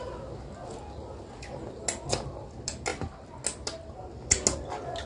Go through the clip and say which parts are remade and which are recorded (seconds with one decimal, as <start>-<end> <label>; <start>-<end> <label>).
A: 0.0-5.1 recorded